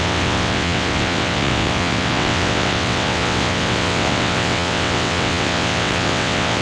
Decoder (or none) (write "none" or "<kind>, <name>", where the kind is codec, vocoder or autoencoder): vocoder, WaveNeXt